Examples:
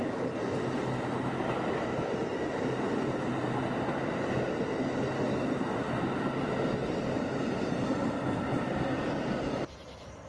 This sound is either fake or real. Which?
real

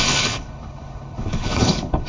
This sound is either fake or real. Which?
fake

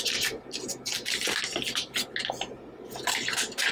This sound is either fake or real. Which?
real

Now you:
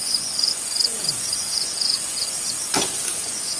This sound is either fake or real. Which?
fake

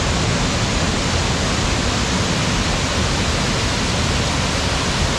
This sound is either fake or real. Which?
real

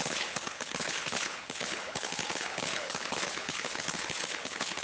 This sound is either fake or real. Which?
fake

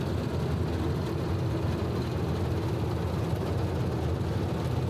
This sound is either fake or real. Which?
real